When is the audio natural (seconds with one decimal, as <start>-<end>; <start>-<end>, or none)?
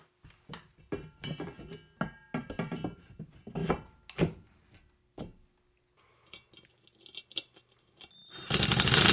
0.0-9.1